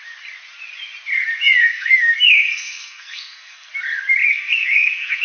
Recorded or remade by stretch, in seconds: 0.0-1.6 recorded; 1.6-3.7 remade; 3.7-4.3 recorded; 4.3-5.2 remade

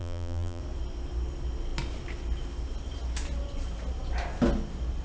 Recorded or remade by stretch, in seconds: 0.0-0.6 remade; 0.6-5.0 recorded

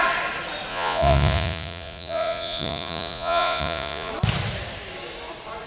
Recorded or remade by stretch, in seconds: 0.0-0.7 recorded; 0.7-4.1 remade; 4.1-5.7 recorded

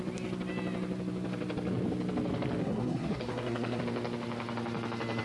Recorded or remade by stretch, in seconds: 0.0-2.6 recorded; 2.6-3.8 remade; 3.8-5.2 recorded